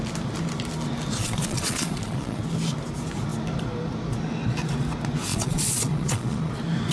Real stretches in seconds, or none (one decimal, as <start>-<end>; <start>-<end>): 0.0-1.2; 2.4-5.3; 6.5-6.9

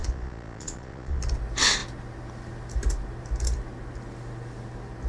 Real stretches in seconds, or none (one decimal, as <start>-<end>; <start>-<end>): 1.2-5.1

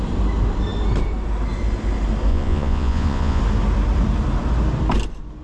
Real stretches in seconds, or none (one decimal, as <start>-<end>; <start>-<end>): 0.0-2.3; 3.4-5.4

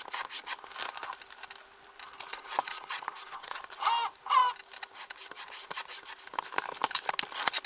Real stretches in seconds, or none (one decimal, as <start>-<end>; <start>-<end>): 0.0-2.3; 3.6-7.7

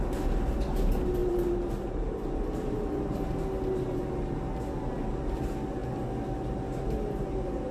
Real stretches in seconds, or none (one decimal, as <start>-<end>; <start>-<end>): 0.0-1.2; 3.2-7.7